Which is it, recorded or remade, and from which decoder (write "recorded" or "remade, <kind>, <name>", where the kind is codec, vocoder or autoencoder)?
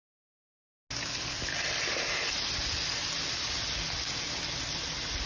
recorded